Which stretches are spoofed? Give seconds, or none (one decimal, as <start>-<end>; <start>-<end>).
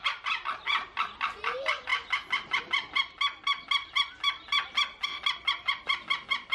none